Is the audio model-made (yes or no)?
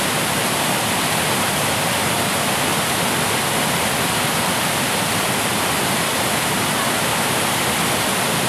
no